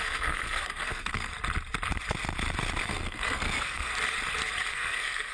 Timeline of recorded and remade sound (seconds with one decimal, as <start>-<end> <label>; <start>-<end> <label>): 0.0-1.3 remade; 1.3-2.8 recorded; 2.8-3.9 remade; 3.9-4.7 recorded; 4.7-5.3 remade